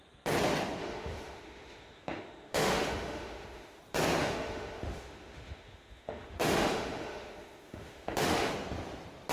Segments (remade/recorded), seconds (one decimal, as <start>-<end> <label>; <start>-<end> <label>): 0.0-0.8 recorded; 0.8-3.8 remade; 3.8-4.2 recorded; 4.2-8.5 remade; 8.5-9.3 recorded